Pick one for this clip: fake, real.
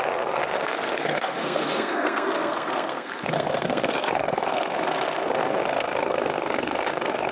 fake